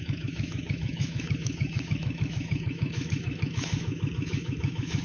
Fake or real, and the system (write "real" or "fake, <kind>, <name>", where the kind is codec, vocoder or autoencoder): fake, autoencoder, DAC-VAE